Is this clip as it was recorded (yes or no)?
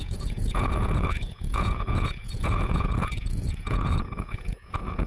no